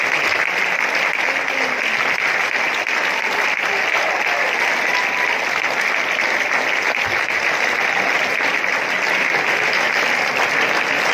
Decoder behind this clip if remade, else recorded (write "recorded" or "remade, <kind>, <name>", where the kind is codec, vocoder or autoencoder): recorded